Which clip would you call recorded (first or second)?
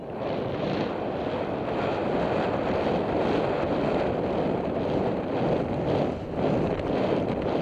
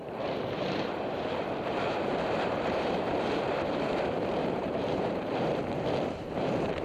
first